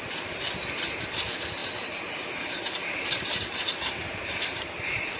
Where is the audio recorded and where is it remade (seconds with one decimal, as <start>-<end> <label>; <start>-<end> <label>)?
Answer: 0.0-5.2 remade